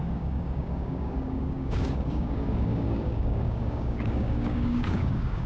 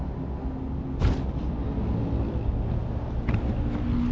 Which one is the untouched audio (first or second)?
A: second